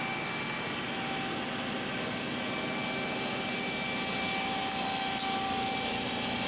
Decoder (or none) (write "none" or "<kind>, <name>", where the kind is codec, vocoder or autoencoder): none